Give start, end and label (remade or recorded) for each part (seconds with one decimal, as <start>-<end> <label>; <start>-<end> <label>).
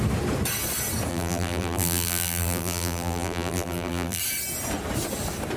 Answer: 0.0-1.1 recorded; 1.1-4.2 remade; 4.2-5.6 recorded